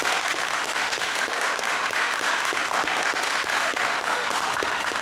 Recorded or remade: remade